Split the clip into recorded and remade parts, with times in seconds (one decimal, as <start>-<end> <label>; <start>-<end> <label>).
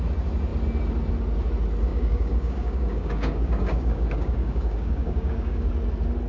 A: 0.0-1.9 recorded; 1.9-5.7 remade; 5.7-6.3 recorded